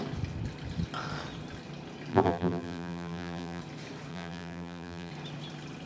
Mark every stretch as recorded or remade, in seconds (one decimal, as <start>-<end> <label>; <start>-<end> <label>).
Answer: 0.0-2.1 recorded; 2.1-3.6 remade; 3.6-4.1 recorded; 4.1-5.1 remade; 5.1-5.9 recorded